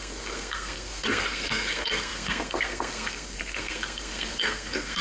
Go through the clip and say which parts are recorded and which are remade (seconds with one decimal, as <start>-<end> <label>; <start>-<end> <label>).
0.0-5.0 remade